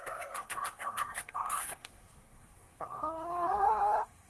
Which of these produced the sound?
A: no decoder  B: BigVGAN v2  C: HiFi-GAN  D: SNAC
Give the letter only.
D